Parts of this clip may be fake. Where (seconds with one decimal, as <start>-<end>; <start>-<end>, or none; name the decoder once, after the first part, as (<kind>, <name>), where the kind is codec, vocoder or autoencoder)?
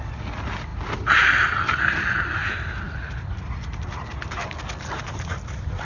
none